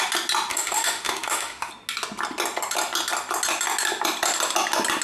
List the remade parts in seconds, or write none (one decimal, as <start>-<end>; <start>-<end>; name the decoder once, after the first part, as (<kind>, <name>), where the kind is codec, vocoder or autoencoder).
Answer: 0.5-1.7 (autoencoder, DAC-VAE)